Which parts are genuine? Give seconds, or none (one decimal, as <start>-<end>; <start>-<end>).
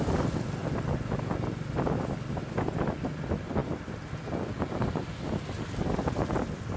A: 0.0-6.8